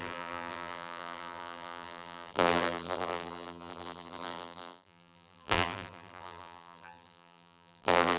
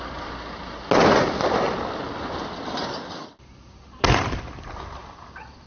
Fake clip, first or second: first